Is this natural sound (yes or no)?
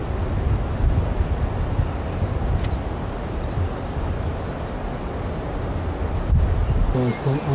yes